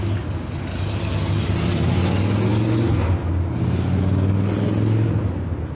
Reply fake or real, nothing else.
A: real